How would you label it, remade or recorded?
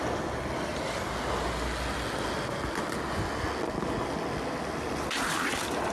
recorded